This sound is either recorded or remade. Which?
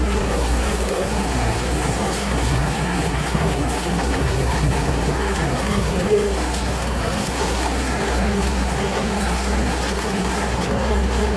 remade